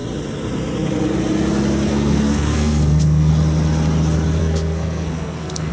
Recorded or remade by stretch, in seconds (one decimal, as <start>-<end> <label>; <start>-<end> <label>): 0.0-1.9 recorded; 1.9-3.3 remade; 3.3-4.4 recorded; 4.4-5.7 remade